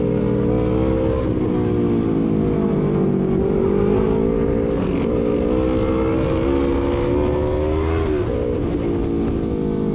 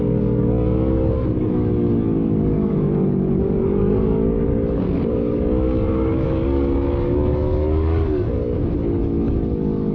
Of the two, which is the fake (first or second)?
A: second